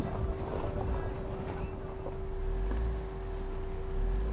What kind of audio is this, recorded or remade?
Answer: recorded